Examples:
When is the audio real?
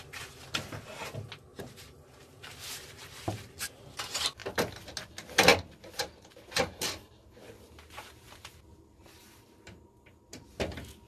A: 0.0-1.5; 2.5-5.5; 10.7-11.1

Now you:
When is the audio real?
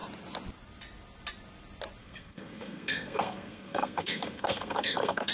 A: 0.0-2.0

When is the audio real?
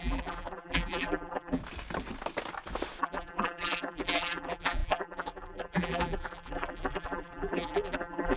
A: 1.6-3.0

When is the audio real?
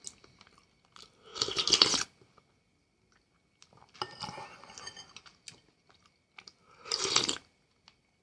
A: 0.0-8.2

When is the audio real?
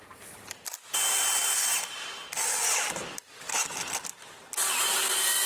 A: 1.4-2.3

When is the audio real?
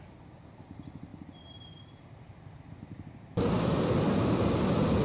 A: 0.0-5.0